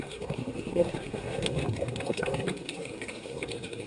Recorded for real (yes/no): no